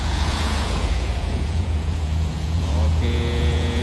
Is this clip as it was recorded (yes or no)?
no